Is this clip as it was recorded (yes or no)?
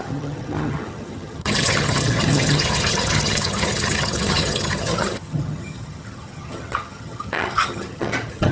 no